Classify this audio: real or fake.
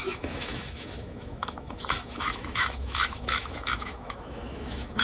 fake